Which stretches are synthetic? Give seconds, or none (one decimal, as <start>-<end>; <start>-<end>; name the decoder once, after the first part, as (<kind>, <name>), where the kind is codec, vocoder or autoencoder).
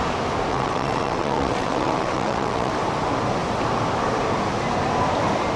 0.5-2.7 (vocoder, WaveNeXt)